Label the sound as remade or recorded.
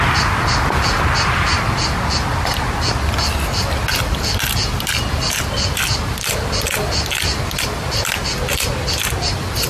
recorded